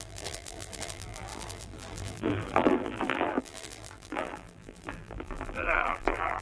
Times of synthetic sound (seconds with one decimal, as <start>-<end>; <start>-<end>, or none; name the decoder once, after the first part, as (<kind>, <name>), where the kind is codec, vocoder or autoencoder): 0.0-6.4 (vocoder, BigVGAN v2)